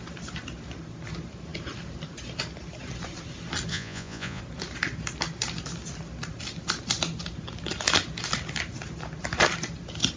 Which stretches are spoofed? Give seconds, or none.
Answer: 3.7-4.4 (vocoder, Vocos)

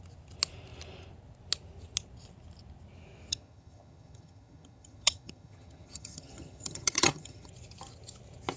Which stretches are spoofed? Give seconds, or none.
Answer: 3.3-7.5 (vocoder, HiFi-GAN)

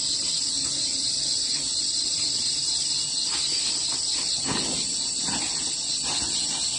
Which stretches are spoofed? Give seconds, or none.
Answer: none

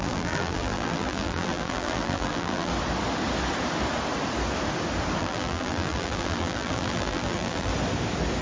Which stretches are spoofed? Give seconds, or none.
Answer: 0.0-2.7 (vocoder, BigVGAN v2); 5.2-7.7

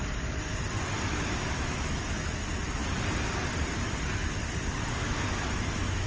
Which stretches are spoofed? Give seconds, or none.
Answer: 1.1-2.3 (autoencoder, DAC-VAE); 5.0-6.1

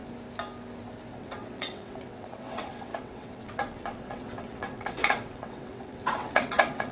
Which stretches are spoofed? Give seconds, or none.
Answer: 1.1-6.9 (vocoder, WaveNeXt)

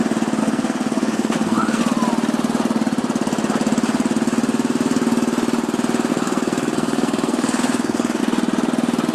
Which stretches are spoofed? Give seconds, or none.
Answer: 0.4-1.8 (codec, SNAC); 6.1-8.2

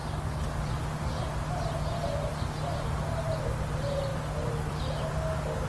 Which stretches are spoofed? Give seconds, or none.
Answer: none